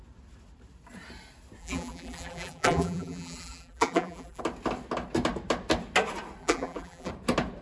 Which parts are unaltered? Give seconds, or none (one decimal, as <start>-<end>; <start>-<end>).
0.0-1.6; 4.4-6.4; 7.1-7.6